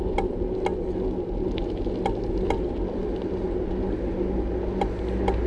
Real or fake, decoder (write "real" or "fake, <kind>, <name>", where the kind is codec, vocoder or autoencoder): real